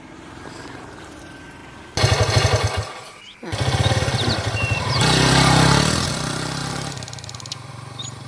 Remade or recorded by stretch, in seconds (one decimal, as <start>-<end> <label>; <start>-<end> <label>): 0.0-1.6 remade; 1.6-4.3 recorded; 4.3-6.6 remade; 6.6-7.7 recorded; 7.7-8.3 remade